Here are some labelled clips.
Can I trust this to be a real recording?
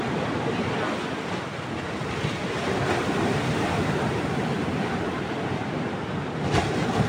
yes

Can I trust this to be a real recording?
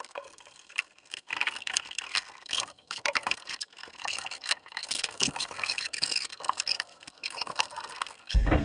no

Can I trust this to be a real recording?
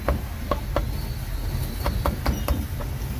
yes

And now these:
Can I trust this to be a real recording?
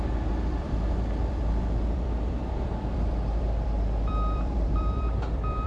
no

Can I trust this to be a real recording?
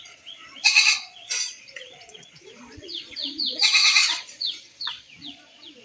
no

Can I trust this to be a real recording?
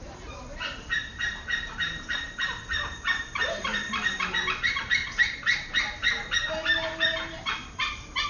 no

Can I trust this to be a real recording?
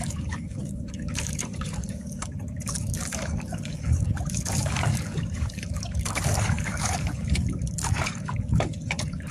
no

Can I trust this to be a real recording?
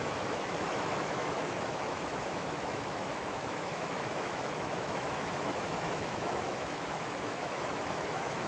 no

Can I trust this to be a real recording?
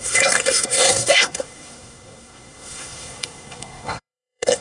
no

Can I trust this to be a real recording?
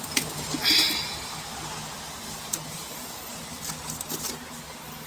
yes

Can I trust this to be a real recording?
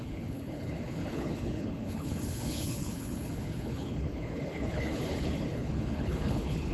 no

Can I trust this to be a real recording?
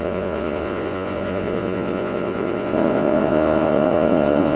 no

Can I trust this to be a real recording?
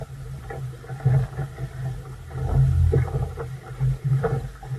yes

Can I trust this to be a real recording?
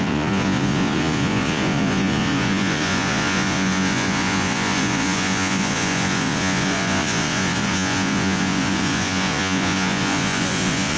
no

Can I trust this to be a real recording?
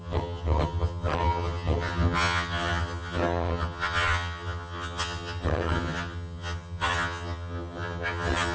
no